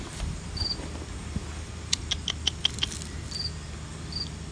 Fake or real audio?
real